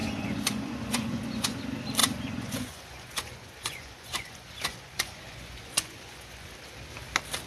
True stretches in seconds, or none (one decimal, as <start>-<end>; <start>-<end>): 1.6-2.0; 6.5-7.5